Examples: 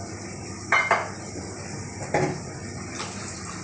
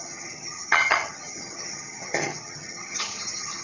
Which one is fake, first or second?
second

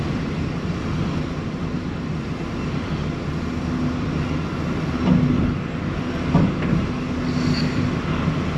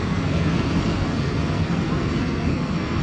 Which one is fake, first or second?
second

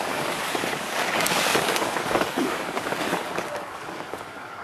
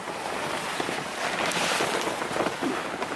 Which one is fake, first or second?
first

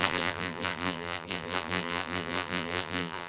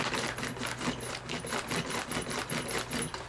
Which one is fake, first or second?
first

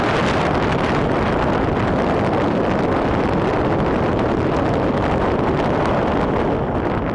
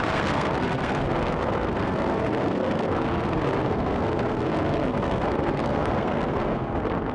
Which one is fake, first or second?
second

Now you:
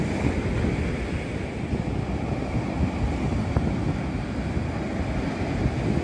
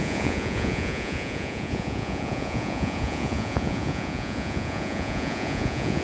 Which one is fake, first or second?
second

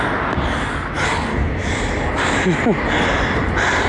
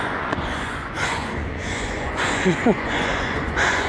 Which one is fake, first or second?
second